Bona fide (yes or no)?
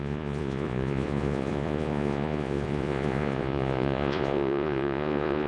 no